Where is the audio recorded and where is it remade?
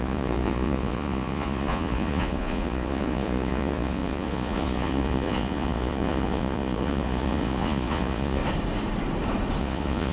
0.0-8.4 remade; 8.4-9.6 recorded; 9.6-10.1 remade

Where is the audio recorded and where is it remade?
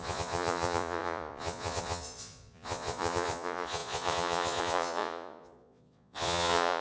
0.0-6.8 remade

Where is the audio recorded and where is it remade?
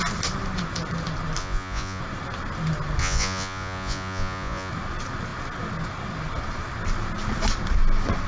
0.0-1.4 recorded; 1.4-2.0 remade; 2.0-3.0 recorded; 3.0-4.7 remade; 4.7-8.3 recorded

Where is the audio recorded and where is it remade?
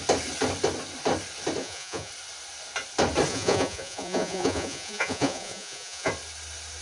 0.0-1.6 recorded; 1.6-2.1 remade; 2.1-3.3 recorded; 3.3-6.1 remade; 6.1-6.8 recorded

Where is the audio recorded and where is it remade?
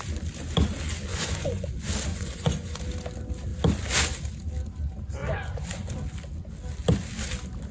0.0-1.1 recorded; 1.1-1.7 remade; 1.7-2.1 recorded; 2.1-2.8 remade; 2.8-5.2 recorded; 5.2-5.9 remade; 5.9-7.7 recorded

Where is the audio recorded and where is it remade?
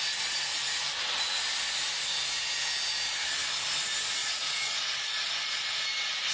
0.0-4.2 recorded; 4.2-5.3 remade; 5.3-6.3 recorded